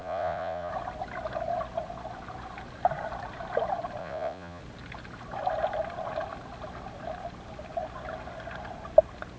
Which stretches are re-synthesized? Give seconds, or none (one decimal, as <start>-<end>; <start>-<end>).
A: 0.0-0.7; 4.0-4.6